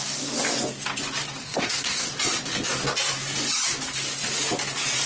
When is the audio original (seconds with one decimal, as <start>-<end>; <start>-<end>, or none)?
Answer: 0.0-1.4; 2.1-5.1